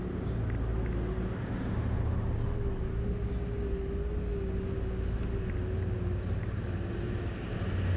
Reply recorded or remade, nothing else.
recorded